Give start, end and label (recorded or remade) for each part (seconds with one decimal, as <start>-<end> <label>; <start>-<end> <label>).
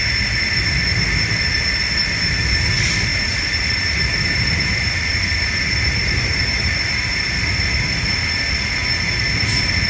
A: 0.0-3.1 recorded; 3.1-7.4 remade; 7.4-9.9 recorded